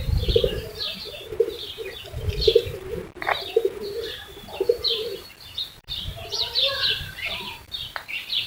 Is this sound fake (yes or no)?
yes